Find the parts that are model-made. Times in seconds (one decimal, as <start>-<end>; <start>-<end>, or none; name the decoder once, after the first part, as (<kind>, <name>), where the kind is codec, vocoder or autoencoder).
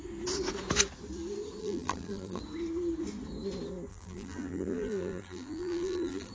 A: 1.6-2.4 (vocoder, BigVGAN v2); 3.9-6.3